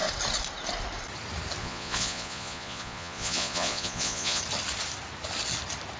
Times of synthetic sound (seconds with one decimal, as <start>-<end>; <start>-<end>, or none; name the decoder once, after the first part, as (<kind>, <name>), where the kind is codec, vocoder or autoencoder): 1.6-4.4 (vocoder, Vocos)

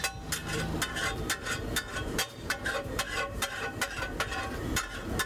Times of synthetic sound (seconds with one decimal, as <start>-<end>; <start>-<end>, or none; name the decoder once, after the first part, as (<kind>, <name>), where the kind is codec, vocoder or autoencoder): 1.9-3.8 (vocoder, BigVGAN v2)

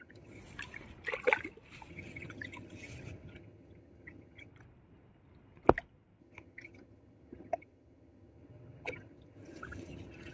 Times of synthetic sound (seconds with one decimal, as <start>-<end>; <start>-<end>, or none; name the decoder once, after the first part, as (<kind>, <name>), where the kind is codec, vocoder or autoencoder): 0.0-0.4 (vocoder, HiFi-GAN); 1.9-4.5; 6.2-10.3

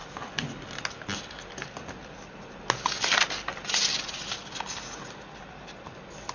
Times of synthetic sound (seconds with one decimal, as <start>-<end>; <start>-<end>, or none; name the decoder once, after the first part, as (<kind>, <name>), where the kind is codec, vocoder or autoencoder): none